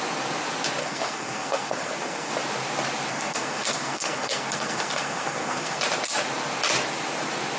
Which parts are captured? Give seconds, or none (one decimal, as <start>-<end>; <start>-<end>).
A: 0.0-0.8; 2.3-3.1; 5.8-7.6